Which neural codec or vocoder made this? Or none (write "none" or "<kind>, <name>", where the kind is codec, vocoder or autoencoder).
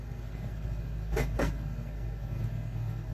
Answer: codec, SNAC